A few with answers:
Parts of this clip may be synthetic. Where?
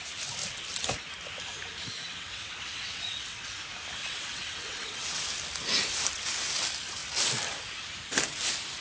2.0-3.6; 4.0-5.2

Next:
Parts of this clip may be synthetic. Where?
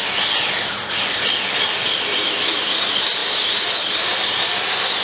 none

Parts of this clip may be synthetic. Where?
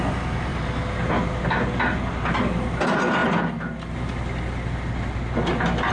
0.5-1.1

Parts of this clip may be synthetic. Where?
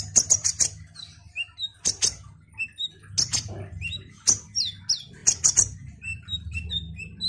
none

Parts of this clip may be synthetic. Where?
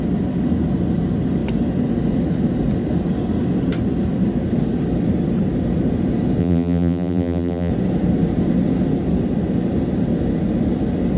6.4-7.7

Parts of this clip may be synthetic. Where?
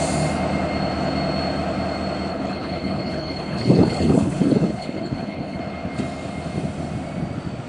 2.3-5.6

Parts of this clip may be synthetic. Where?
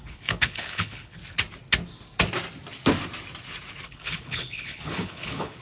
0.0-1.2; 3.8-5.6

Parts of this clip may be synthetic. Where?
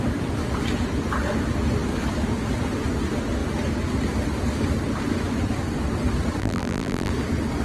6.4-7.1